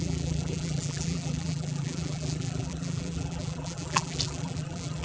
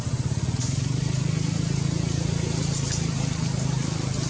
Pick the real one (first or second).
second